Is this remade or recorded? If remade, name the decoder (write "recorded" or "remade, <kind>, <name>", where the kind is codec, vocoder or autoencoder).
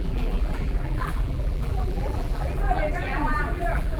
remade, vocoder, BigVGAN v2